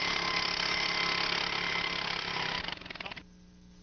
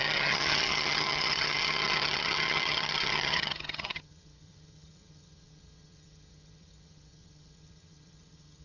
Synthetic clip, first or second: second